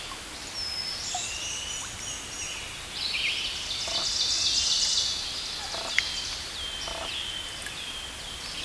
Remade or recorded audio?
recorded